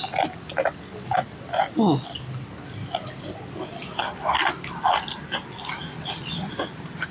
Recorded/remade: recorded